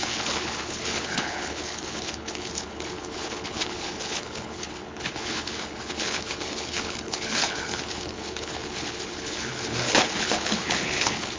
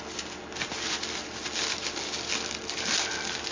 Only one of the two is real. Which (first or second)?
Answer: second